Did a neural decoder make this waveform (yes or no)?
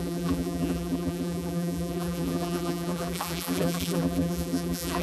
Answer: yes